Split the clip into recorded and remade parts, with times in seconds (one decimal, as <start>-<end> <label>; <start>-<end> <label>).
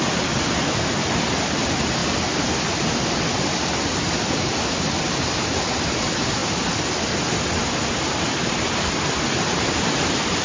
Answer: 0.0-10.4 recorded